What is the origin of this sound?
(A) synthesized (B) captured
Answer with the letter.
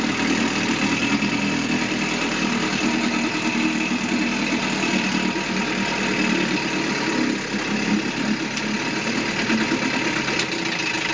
B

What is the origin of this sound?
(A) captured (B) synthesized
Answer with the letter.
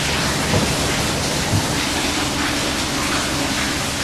A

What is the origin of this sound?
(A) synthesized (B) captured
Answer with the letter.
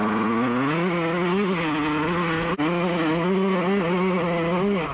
B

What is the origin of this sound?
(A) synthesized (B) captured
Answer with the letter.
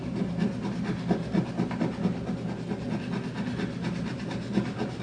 B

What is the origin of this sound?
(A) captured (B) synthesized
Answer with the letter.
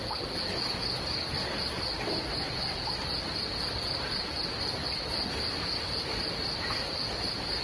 A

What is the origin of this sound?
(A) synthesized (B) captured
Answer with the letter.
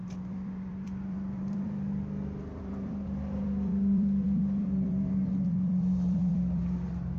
A